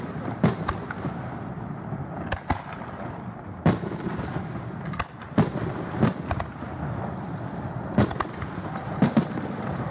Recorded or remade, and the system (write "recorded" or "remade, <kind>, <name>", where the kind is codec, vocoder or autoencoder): recorded